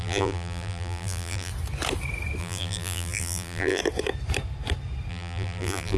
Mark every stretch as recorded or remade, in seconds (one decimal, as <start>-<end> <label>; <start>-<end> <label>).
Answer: 0.0-1.5 remade; 1.5-2.4 recorded; 2.4-3.8 remade; 3.8-5.1 recorded; 5.1-6.0 remade